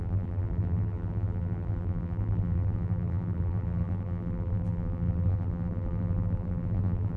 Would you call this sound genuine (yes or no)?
no